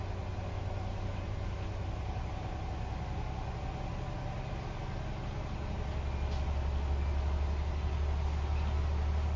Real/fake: real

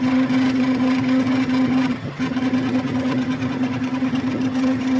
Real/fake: fake